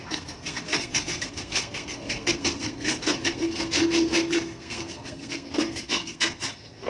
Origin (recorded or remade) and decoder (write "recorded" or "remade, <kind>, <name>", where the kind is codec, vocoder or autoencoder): remade, codec, SNAC